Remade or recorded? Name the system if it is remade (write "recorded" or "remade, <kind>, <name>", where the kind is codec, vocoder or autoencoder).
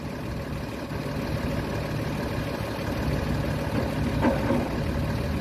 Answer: recorded